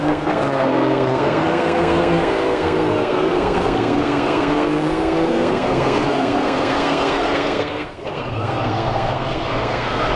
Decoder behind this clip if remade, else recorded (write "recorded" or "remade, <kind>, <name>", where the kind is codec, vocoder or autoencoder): remade, codec, SNAC